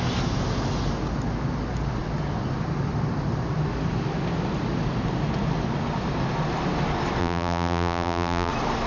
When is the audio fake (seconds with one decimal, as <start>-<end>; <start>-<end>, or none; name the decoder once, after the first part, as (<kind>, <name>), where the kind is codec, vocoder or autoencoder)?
7.2-8.5 (vocoder, BigVGAN v2)